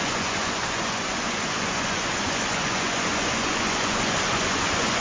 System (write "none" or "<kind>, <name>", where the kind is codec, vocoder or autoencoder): vocoder, Vocos